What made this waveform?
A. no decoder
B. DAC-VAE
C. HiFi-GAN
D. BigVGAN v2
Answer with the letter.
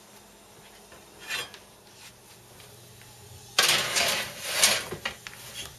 A